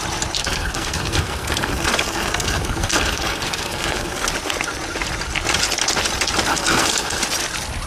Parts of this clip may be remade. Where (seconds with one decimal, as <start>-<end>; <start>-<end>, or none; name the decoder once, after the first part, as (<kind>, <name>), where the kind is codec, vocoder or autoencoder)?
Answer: 0.4-4.3 (codec, SNAC); 6.5-7.2